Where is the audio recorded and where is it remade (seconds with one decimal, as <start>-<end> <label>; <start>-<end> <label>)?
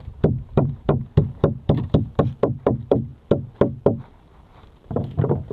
0.0-3.1 remade; 3.1-4.0 recorded; 4.0-5.5 remade